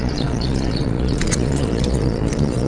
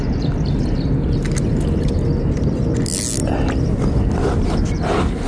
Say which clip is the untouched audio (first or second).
second